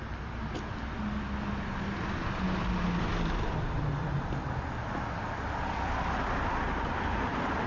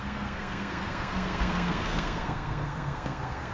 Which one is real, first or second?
first